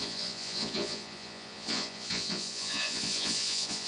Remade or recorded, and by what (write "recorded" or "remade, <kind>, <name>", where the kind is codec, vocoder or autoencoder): remade, vocoder, Vocos